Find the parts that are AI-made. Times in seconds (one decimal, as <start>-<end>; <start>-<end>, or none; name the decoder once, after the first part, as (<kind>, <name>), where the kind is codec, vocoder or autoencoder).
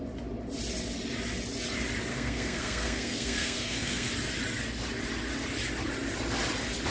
2.1-4.1 (codec, SNAC)